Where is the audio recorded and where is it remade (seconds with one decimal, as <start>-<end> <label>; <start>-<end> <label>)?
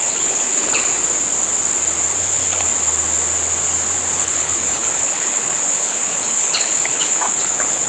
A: 0.0-0.9 remade; 0.9-2.2 recorded; 2.2-2.7 remade; 2.7-4.1 recorded; 4.1-7.9 remade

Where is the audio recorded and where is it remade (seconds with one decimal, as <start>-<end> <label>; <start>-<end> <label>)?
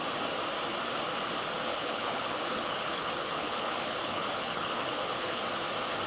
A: 0.0-1.7 recorded; 1.7-5.4 remade; 5.4-6.1 recorded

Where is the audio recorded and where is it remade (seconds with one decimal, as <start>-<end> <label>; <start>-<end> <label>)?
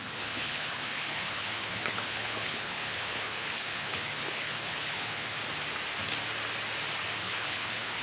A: 0.0-5.4 remade; 5.4-7.2 recorded; 7.2-8.0 remade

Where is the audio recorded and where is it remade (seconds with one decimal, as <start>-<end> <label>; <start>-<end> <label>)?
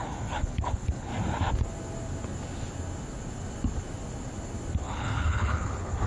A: 0.0-1.1 remade; 1.1-4.8 recorded; 4.8-6.1 remade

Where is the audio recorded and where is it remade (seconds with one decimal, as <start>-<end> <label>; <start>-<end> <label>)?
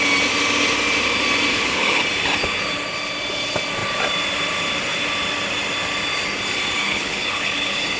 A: 0.0-1.5 recorded; 1.5-2.0 remade; 2.0-6.8 recorded; 6.8-8.0 remade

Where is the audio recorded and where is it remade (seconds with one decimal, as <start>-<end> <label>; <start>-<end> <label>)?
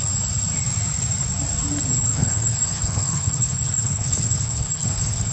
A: 0.0-1.9 recorded; 1.9-5.3 remade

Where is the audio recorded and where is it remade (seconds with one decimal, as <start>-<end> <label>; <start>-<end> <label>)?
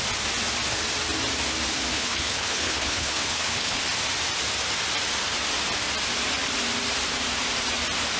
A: 0.0-1.9 recorded; 1.9-3.8 remade; 3.8-8.2 recorded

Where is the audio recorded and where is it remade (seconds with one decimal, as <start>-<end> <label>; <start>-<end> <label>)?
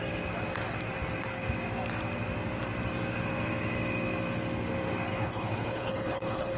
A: 0.0-5.1 recorded; 5.1-6.6 remade